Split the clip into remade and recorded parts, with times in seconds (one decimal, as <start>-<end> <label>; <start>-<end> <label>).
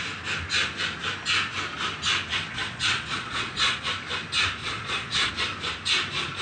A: 0.0-2.5 recorded; 2.5-3.8 remade; 3.8-4.6 recorded; 4.6-5.3 remade; 5.3-6.4 recorded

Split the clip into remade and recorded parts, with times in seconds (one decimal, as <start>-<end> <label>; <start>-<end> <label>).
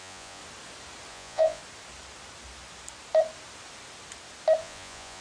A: 0.0-0.4 remade; 0.4-1.1 recorded; 1.1-1.6 remade; 1.6-4.6 recorded; 4.6-5.2 remade